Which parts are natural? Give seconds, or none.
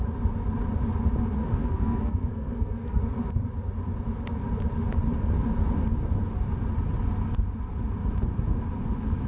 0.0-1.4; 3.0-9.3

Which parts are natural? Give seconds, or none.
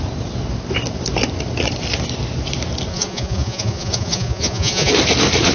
0.0-2.9; 4.9-5.5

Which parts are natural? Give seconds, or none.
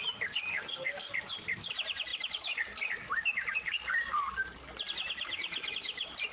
0.0-0.5; 1.1-6.3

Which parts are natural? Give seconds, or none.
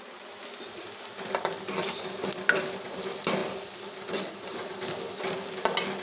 0.0-6.0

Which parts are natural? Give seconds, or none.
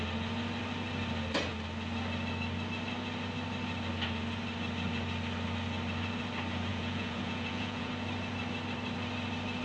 0.0-6.7; 7.9-9.6